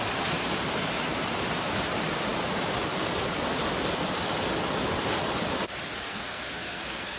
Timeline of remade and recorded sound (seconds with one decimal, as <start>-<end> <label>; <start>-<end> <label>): 0.0-6.1 recorded; 6.1-7.2 remade